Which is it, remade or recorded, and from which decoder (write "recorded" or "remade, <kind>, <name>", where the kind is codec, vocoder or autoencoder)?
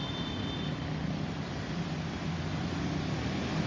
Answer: recorded